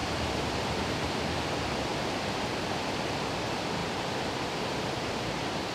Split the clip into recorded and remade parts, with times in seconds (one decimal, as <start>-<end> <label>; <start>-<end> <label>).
0.0-1.2 remade; 1.2-3.8 recorded; 3.8-5.7 remade

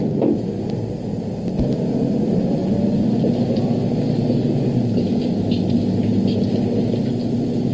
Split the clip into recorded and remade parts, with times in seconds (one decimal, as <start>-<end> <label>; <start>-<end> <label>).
0.0-7.7 recorded

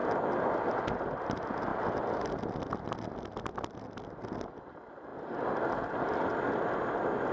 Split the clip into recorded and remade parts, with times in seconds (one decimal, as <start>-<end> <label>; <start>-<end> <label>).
0.0-7.3 recorded

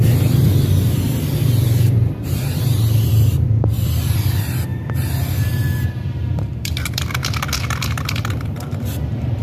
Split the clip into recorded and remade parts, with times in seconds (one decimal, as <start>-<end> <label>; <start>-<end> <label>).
0.0-4.7 remade; 4.7-5.9 recorded; 5.9-9.4 remade

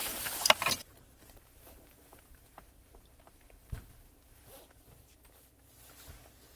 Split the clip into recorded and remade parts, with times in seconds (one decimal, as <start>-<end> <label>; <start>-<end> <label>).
0.0-3.9 remade; 3.9-4.4 recorded; 4.4-5.1 remade; 5.1-6.6 recorded

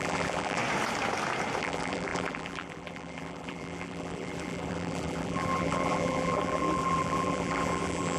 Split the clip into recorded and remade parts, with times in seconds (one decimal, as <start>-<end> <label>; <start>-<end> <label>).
0.0-0.6 remade; 0.6-1.6 recorded; 1.6-8.2 remade

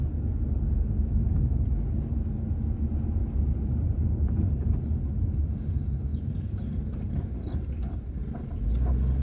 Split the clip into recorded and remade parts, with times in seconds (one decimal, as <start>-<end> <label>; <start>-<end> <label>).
0.0-3.2 recorded; 3.2-4.8 remade; 4.8-6.1 recorded; 6.1-7.1 remade; 7.1-9.2 recorded